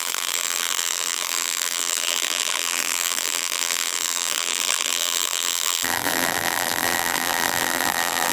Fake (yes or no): yes